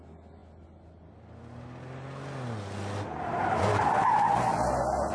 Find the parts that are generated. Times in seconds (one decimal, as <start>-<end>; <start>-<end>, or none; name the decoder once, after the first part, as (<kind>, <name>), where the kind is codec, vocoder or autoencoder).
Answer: none